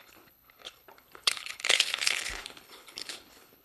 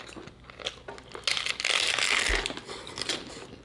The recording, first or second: second